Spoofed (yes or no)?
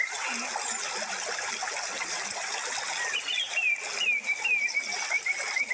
no